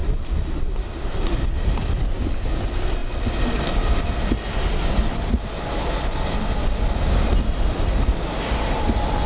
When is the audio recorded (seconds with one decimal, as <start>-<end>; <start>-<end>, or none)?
0.0-9.3